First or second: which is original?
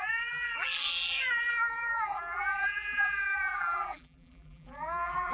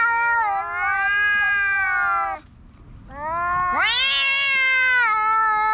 second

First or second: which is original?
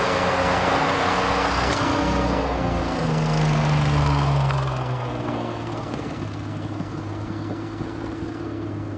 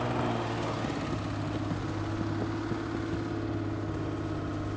second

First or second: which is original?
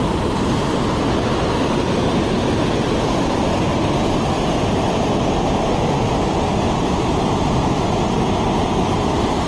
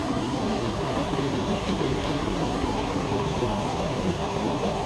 first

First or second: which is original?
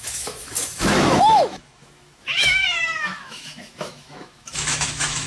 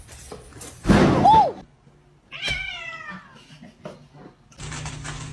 second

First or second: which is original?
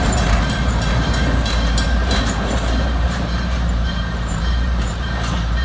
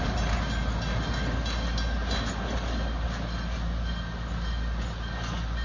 second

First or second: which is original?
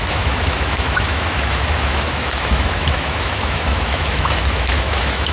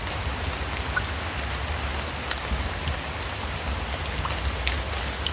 second